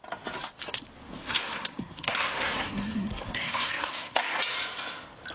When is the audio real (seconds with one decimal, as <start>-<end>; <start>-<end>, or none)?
0.0-1.2; 4.4-5.3